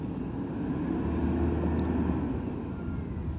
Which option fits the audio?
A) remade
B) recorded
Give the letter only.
B